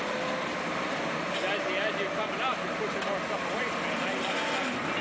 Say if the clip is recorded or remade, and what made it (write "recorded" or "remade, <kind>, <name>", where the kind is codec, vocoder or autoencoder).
recorded